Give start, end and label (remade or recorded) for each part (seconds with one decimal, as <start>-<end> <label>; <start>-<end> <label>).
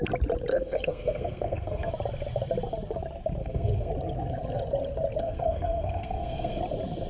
0.0-0.5 recorded; 0.5-1.9 remade; 1.9-3.4 recorded; 3.4-3.9 remade; 3.9-5.2 recorded; 5.2-6.6 remade; 6.6-7.1 recorded